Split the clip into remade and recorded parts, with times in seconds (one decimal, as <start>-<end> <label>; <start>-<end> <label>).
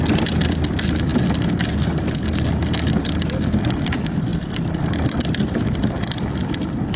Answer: 0.0-7.0 recorded